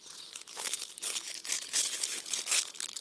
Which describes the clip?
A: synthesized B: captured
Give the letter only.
A